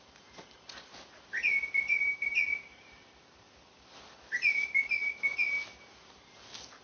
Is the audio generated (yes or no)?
no